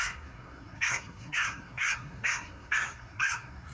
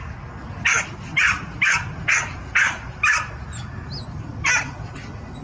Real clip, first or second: second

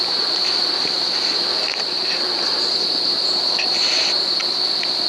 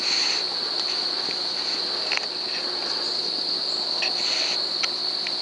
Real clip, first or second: second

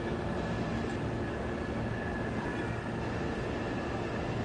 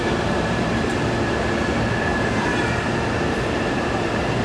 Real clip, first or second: first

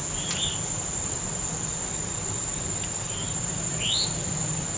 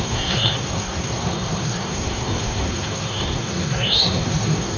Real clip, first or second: first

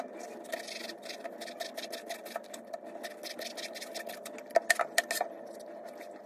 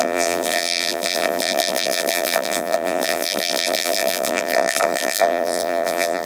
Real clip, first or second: first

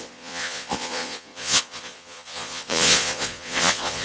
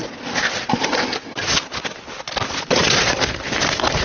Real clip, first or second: second